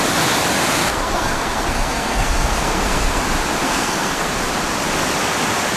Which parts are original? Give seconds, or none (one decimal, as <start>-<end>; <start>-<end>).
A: 0.0-0.9; 3.2-3.6; 4.3-5.8